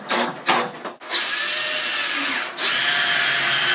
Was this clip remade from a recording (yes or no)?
no